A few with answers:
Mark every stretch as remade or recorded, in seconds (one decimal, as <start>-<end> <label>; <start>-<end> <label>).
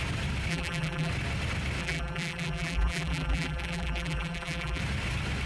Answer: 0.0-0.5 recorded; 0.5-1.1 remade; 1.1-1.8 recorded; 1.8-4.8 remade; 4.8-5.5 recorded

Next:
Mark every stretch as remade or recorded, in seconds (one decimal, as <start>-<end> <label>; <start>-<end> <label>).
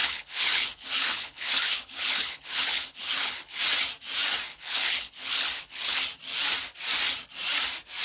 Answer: 0.0-3.6 remade; 3.6-4.5 recorded; 4.5-6.0 remade; 6.0-8.0 recorded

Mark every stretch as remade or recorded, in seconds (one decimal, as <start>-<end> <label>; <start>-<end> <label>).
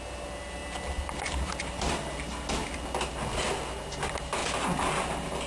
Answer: 0.0-5.5 recorded